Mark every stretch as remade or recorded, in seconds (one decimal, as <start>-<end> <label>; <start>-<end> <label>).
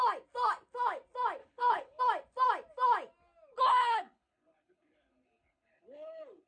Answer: 0.0-1.4 recorded; 1.4-2.0 remade; 2.0-3.5 recorded; 3.5-6.5 remade